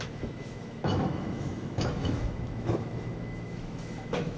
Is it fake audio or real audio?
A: fake